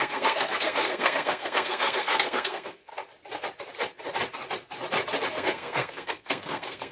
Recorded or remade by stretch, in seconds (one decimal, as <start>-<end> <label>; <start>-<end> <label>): 0.0-2.9 remade; 2.9-5.3 recorded; 5.3-6.9 remade

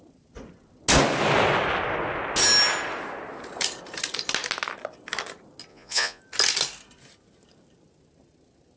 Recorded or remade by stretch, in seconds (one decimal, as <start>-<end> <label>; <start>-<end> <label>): 0.0-5.7 recorded; 5.7-6.2 remade; 6.2-8.8 recorded

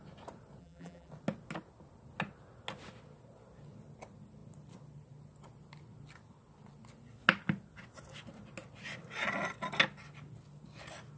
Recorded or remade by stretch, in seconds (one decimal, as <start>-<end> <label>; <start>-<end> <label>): 0.0-0.6 recorded; 0.6-1.1 remade; 1.1-11.2 recorded

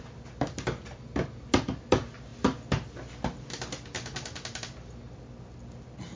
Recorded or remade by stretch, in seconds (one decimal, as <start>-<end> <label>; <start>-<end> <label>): 0.0-6.2 recorded

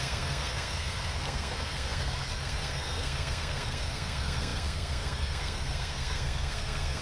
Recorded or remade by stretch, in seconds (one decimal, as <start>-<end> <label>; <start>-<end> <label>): 0.0-7.0 remade

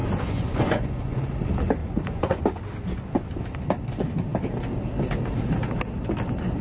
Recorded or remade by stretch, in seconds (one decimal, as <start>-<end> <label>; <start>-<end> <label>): 0.0-1.3 remade; 1.3-1.8 recorded; 1.8-2.4 remade; 2.4-6.6 recorded

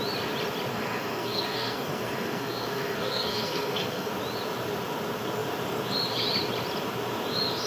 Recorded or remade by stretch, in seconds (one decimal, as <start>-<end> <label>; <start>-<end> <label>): 0.0-0.7 recorded; 0.7-4.1 remade; 4.1-7.7 recorded

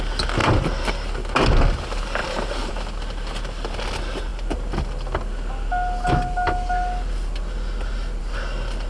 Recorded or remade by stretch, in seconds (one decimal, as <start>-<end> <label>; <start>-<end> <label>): 0.0-0.4 recorded; 0.4-0.9 remade; 0.9-2.2 recorded; 2.2-2.7 remade; 2.7-8.9 recorded